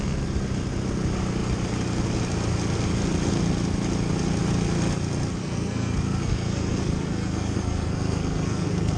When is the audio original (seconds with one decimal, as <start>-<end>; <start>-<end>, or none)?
0.0-5.4